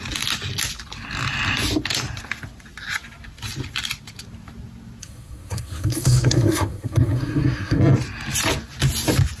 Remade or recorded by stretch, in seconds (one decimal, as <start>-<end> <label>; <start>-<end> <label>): 0.0-5.0 recorded; 5.0-7.8 remade; 7.8-9.4 recorded